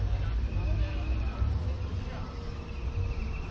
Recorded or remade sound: recorded